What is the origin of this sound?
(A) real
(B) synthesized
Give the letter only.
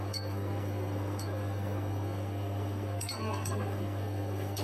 B